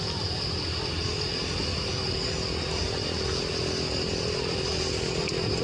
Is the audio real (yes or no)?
yes